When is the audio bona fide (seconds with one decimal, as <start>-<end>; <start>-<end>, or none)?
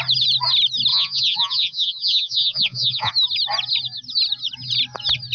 0.0-0.9; 3.1-5.3